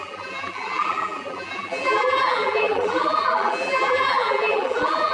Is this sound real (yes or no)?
no